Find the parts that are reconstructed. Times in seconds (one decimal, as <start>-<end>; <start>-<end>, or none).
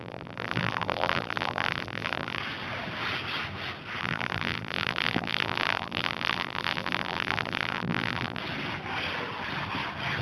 0.0-2.4; 4.0-8.4